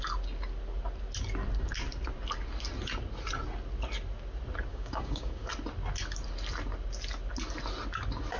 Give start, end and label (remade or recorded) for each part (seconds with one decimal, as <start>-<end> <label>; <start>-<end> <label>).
0.0-4.7 recorded; 4.7-5.5 remade; 5.5-8.4 recorded